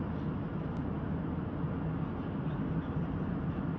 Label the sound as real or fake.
real